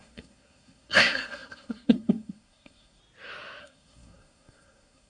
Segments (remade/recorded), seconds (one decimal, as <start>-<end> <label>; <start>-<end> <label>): 0.0-3.0 remade; 3.0-3.6 recorded; 3.6-5.1 remade